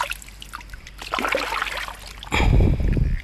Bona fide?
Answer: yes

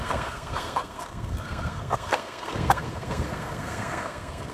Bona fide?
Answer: no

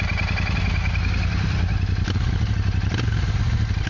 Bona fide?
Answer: yes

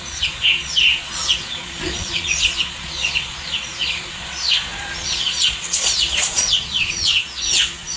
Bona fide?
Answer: no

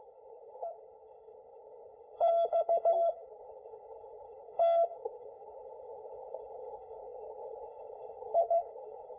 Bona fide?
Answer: no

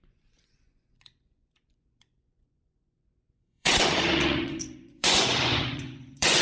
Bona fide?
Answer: no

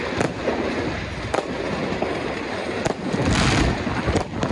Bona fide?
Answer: yes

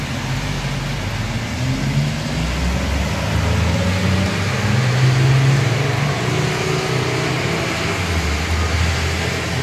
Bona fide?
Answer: yes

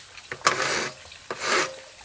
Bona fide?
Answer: yes